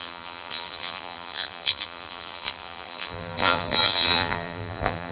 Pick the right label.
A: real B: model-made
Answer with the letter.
B